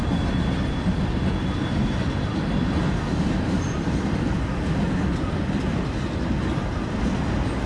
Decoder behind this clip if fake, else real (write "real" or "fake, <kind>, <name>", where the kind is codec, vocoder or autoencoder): real